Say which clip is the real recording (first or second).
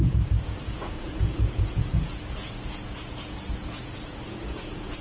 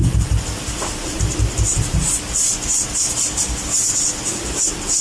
second